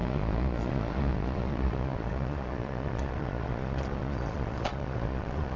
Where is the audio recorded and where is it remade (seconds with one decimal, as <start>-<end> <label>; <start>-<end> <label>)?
0.0-5.6 remade